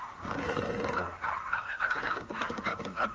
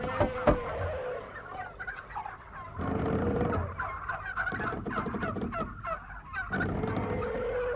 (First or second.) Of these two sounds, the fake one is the first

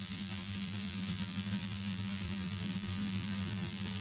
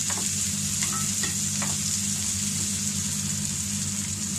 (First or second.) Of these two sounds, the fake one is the first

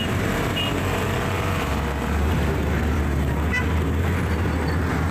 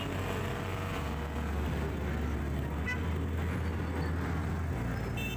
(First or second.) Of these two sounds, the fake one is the first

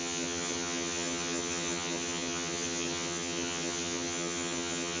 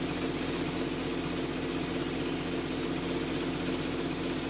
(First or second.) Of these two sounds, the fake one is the first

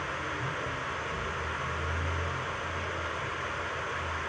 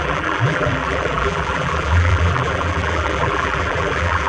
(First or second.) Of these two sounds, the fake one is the second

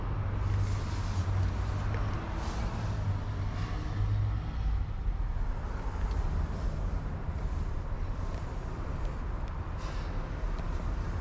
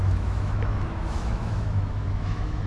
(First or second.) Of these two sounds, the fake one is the second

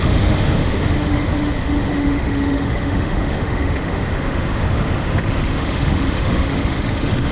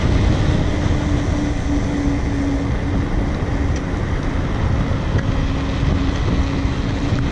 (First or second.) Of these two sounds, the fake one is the first